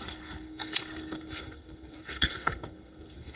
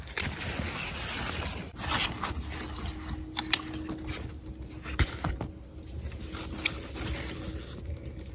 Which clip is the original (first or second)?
second